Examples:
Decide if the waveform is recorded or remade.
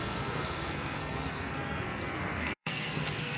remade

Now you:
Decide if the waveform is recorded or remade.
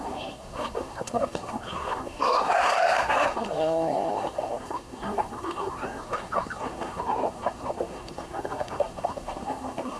remade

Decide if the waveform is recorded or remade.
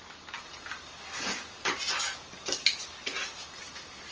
recorded